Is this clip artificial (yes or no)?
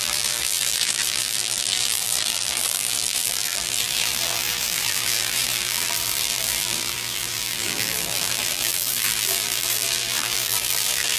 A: yes